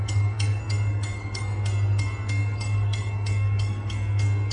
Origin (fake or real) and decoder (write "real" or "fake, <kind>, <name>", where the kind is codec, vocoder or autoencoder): fake, codec, SNAC